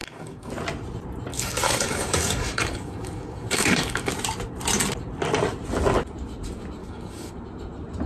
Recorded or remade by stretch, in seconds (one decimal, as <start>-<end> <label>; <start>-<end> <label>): 0.0-0.5 remade; 0.5-1.3 recorded; 1.3-4.1 remade; 4.1-6.8 recorded; 6.8-7.3 remade; 7.3-8.1 recorded